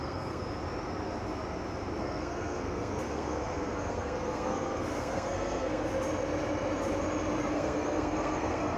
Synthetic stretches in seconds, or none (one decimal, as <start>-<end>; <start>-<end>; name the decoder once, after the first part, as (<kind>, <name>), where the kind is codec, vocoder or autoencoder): 0.0-0.4 (codec, SNAC); 2.0-5.9; 7.5-8.8